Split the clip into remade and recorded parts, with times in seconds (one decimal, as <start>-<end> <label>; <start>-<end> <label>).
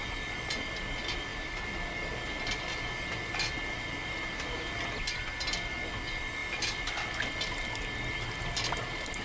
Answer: 0.0-9.2 recorded